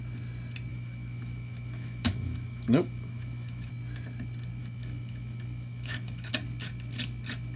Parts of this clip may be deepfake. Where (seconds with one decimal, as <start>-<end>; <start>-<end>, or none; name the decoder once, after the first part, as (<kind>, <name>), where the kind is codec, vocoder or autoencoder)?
0.7-3.7 (autoencoder, DAC-VAE); 4.6-6.3